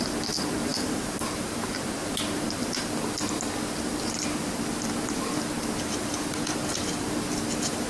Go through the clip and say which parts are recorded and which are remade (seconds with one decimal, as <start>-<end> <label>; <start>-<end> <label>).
0.0-7.9 recorded

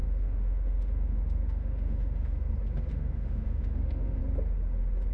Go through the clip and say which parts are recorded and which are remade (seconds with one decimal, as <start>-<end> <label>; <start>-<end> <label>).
0.0-2.3 remade; 2.3-2.9 recorded; 2.9-4.2 remade; 4.2-5.1 recorded

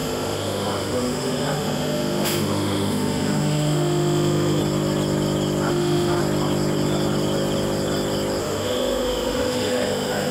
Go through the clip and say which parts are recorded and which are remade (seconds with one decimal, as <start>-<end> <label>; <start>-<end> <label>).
0.0-4.6 remade; 4.6-5.7 recorded; 5.7-6.2 remade; 6.2-8.4 recorded; 8.4-10.3 remade

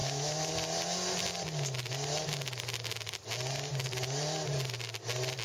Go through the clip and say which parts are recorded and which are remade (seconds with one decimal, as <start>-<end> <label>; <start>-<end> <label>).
0.0-0.5 remade; 0.5-5.4 recorded

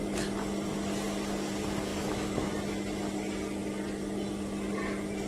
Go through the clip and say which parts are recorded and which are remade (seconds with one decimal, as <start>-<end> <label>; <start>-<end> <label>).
0.0-1.9 recorded; 1.9-2.5 remade; 2.5-5.3 recorded

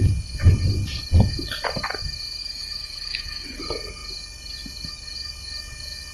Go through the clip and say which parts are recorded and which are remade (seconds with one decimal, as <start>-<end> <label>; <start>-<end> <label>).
0.0-2.4 recorded; 2.4-3.6 remade; 3.6-6.1 recorded

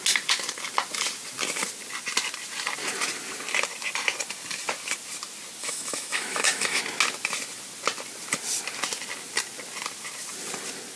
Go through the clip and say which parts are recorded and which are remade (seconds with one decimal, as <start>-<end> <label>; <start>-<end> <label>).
0.0-5.6 recorded; 5.6-6.8 remade; 6.8-11.0 recorded

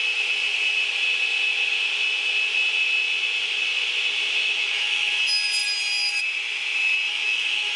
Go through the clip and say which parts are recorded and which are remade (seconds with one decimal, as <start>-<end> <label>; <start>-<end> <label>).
0.0-4.4 recorded; 4.4-5.1 remade; 5.1-7.1 recorded; 7.1-7.8 remade